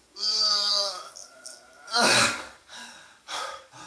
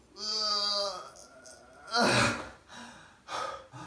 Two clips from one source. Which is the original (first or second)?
second